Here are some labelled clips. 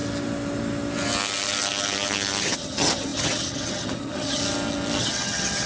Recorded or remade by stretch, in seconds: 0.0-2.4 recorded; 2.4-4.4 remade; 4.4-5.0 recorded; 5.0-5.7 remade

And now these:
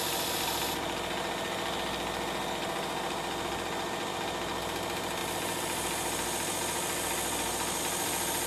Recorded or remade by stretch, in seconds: 0.0-8.5 recorded

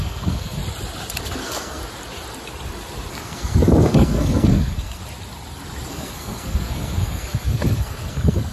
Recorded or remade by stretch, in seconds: 0.0-0.6 remade; 0.6-1.2 recorded; 1.2-1.8 remade; 1.8-3.1 recorded; 3.1-5.0 remade; 5.0-5.9 recorded; 5.9-8.5 remade

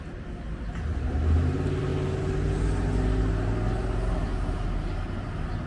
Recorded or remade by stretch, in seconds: 0.0-1.9 remade; 1.9-5.2 recorded; 5.2-5.7 remade

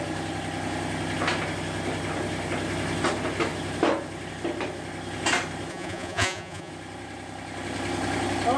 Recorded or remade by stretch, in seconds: 0.0-5.7 recorded; 5.7-6.7 remade; 6.7-8.6 recorded

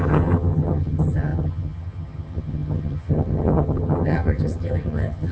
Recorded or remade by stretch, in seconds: 0.0-5.3 remade

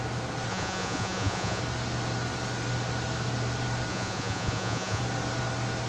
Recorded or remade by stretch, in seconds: 0.0-0.5 recorded; 0.5-1.6 remade; 1.6-3.9 recorded; 3.9-5.0 remade; 5.0-5.9 recorded

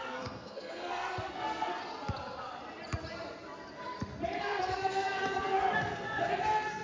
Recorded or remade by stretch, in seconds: 0.0-1.8 remade; 1.8-4.4 recorded; 4.4-6.8 remade